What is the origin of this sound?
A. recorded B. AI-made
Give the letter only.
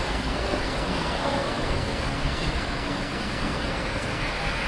B